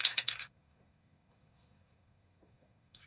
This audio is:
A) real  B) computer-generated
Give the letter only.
B